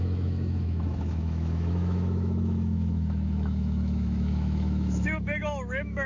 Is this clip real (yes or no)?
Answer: no